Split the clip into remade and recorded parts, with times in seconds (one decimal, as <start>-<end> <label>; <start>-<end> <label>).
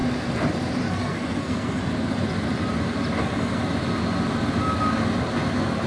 0.0-0.9 recorded; 0.9-1.8 remade; 1.8-3.2 recorded; 3.2-3.6 remade; 3.6-5.9 recorded